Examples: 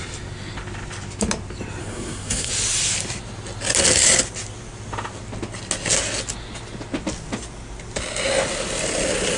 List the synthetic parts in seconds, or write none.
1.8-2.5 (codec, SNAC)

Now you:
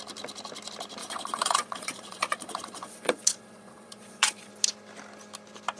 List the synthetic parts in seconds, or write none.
1.0-4.5 (vocoder, Vocos)

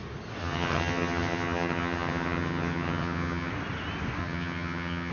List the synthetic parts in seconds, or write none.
0.4-3.5 (vocoder, HiFi-GAN); 4.2-5.1